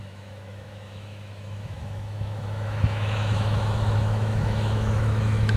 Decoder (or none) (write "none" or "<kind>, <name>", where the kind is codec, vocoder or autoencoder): autoencoder, DAC-VAE